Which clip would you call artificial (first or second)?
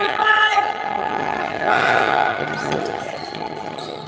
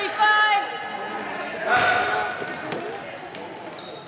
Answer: first